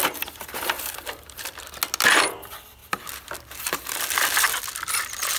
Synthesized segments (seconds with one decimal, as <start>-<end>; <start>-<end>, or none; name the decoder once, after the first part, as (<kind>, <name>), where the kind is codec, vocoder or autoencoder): 0.0-1.6 (vocoder, BigVGAN v2)